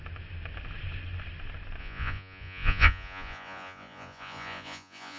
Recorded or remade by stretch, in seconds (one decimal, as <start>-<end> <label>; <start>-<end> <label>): 0.0-1.8 recorded; 1.8-5.2 remade